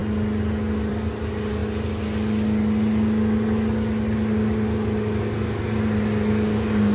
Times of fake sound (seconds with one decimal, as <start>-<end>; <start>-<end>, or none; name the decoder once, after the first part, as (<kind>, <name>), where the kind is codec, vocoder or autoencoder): none